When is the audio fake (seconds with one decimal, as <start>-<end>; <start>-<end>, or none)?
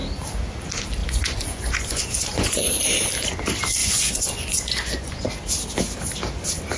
1.0-2.8; 3.8-5.3